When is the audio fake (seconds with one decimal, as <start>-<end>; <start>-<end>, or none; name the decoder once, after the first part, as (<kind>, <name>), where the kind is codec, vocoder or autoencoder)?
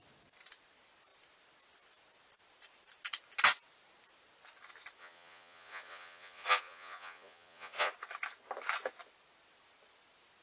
5.0-7.9 (vocoder, Vocos)